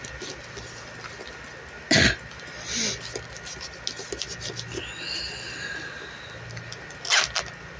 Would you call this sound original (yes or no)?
yes